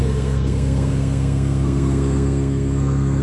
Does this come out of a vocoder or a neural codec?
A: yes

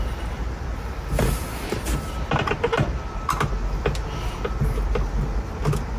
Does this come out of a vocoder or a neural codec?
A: no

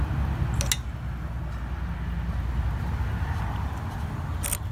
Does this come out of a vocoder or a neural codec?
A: no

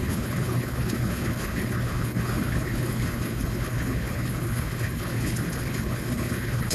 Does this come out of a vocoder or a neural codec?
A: yes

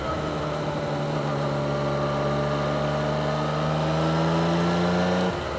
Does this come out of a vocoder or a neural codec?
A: no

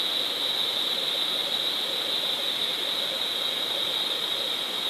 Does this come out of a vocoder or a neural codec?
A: no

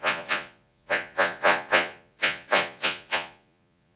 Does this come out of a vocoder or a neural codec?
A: yes